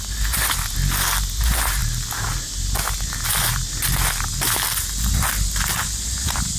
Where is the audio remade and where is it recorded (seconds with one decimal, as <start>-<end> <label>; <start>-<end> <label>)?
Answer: 0.0-6.6 recorded